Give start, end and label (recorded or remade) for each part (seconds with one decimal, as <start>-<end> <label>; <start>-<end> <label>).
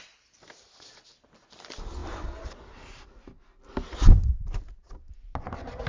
0.0-5.9 recorded